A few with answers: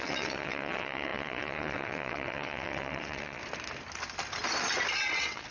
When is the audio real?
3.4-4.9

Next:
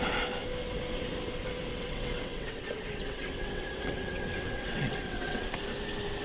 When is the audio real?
0.0-1.7; 5.4-6.2

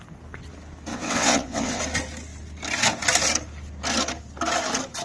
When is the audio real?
0.0-0.9; 1.8-5.0

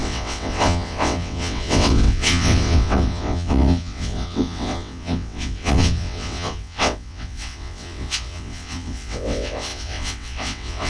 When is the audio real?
none

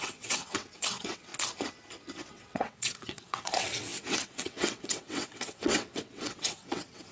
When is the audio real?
1.3-2.3

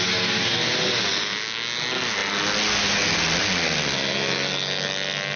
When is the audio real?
0.0-5.4